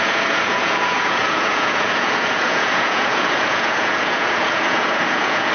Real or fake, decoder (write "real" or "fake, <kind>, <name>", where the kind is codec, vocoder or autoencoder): fake, vocoder, Vocos